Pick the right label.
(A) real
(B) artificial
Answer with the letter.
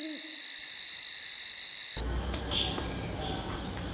A